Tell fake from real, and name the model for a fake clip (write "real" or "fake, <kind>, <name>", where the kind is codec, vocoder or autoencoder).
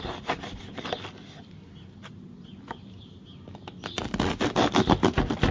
real